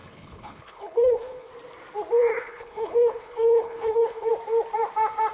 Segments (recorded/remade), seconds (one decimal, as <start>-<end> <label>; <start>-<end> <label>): 0.0-1.5 remade; 1.5-2.3 recorded; 2.3-4.3 remade; 4.3-5.3 recorded